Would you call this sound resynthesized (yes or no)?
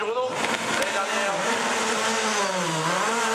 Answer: no